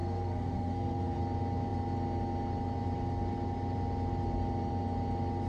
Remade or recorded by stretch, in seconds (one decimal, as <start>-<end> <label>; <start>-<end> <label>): 0.0-1.2 remade; 1.2-5.5 recorded